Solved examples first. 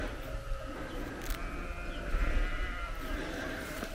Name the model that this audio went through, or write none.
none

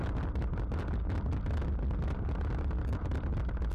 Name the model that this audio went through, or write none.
none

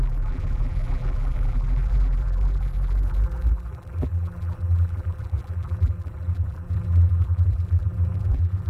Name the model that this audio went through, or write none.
vocoder, BigVGAN v2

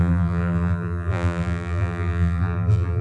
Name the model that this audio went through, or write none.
vocoder, BigVGAN v2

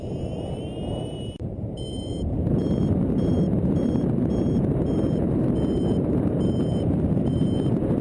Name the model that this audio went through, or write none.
vocoder, BigVGAN v2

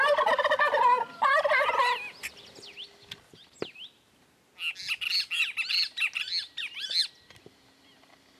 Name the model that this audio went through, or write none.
none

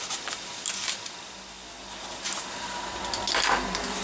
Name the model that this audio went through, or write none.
none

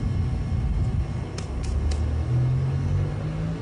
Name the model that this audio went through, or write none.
none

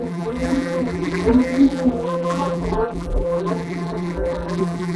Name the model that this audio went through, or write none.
vocoder, BigVGAN v2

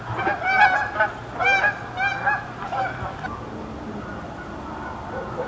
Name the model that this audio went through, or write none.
none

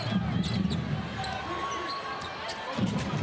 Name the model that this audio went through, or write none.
none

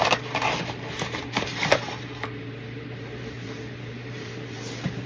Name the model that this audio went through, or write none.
vocoder, BigVGAN v2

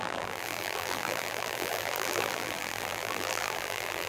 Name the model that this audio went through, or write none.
vocoder, BigVGAN v2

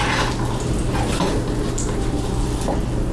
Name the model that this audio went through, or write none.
none